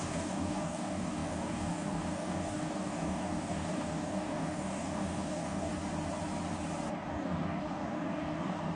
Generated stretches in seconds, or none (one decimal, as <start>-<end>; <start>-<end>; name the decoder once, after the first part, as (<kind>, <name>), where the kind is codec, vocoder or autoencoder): 0.0-5.7 (codec, DAC); 6.9-8.8